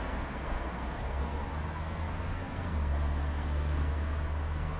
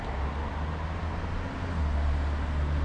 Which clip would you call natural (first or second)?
second